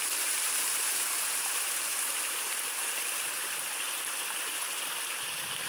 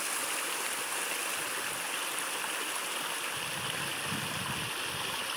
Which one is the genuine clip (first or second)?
second